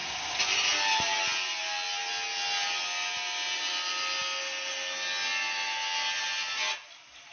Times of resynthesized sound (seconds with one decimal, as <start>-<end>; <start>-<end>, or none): none